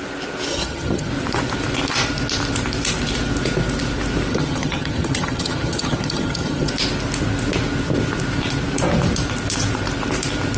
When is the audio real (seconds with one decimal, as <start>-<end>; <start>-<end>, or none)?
0.0-0.5; 1.1-4.3; 6.7-10.6